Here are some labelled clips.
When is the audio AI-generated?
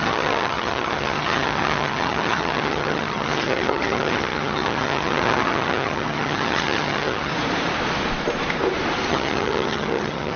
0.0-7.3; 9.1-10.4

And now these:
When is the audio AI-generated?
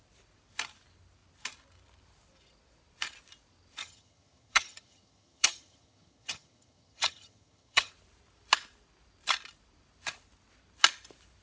3.8-7.9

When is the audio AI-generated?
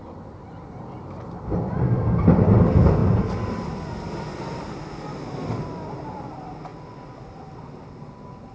none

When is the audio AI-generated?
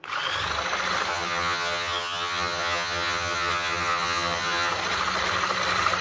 1.1-4.7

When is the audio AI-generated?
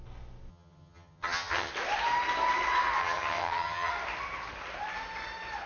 0.5-1.7; 3.0-3.9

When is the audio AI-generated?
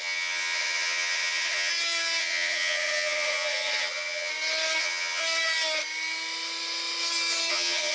0.0-1.7; 2.2-4.3; 4.8-5.2; 7.5-7.9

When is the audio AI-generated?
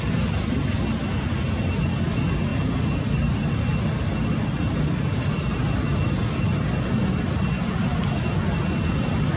none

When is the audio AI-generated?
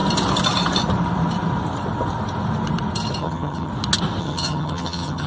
3.2-3.7; 4.2-5.3